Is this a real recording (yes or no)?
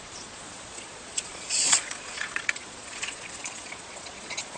no